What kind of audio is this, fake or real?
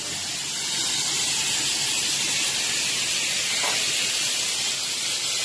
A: real